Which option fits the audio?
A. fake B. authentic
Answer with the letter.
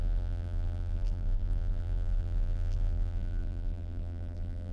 A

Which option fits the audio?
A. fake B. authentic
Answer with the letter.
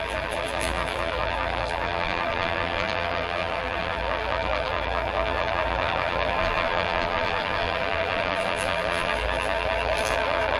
A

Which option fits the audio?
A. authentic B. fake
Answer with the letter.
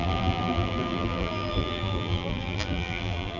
B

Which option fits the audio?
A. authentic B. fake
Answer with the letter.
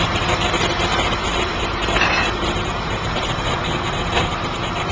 B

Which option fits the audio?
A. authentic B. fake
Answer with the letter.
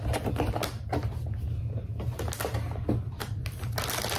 A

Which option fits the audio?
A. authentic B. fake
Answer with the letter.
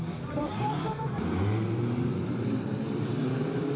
B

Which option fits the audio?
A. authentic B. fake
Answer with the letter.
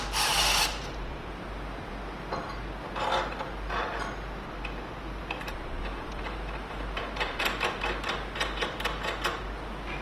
A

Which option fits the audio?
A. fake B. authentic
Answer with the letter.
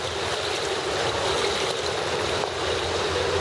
B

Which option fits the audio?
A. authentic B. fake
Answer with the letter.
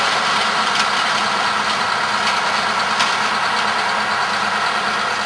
A